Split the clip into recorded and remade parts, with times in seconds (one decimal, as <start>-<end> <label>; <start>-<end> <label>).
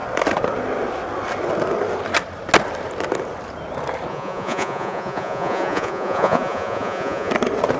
0.0-4.1 recorded; 4.1-7.3 remade; 7.3-7.8 recorded